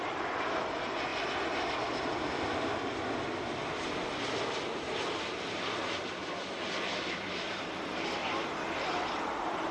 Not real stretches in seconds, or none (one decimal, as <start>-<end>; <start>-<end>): 0.0-1.1; 5.2-8.2; 8.9-9.7